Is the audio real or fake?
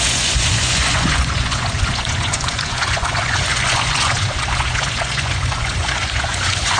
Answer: fake